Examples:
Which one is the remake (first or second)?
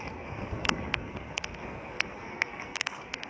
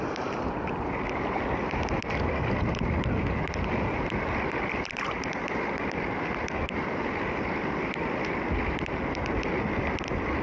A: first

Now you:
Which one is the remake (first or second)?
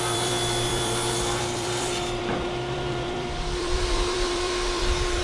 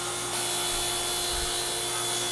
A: first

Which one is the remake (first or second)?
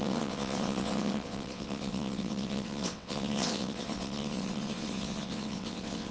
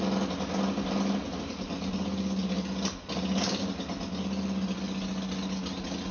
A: first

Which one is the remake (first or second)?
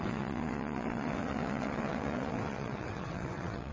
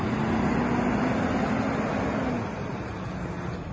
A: first